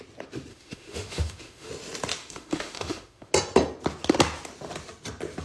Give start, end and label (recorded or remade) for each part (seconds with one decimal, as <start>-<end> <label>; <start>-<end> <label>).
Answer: 0.0-0.5 recorded; 0.5-1.7 remade; 1.7-2.2 recorded; 2.2-3.3 remade; 3.3-5.4 recorded